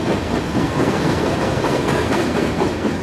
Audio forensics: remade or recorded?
remade